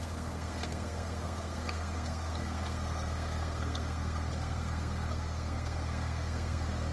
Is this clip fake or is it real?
fake